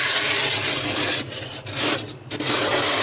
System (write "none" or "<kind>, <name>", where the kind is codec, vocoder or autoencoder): none